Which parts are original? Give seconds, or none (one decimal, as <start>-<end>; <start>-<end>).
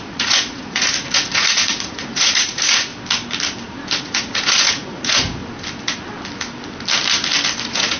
2.9-4.0; 5.4-7.6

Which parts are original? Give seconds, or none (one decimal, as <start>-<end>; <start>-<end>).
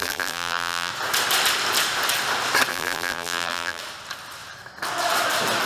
0.9-2.7; 3.8-5.7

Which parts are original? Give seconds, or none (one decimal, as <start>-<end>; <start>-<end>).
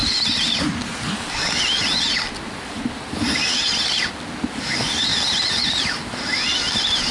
0.0-7.1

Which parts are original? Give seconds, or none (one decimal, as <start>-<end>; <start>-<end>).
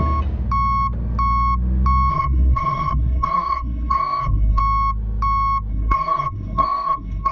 0.0-2.1; 4.6-5.7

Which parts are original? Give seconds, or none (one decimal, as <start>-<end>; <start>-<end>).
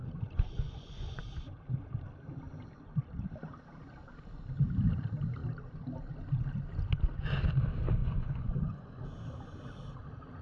1.2-8.0; 8.9-10.4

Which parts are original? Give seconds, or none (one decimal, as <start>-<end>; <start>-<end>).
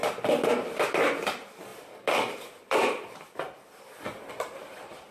0.0-1.7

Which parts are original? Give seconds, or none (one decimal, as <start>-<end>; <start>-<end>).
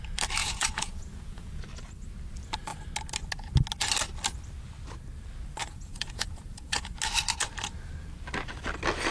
0.0-0.4; 1.6-5.6; 6.9-9.1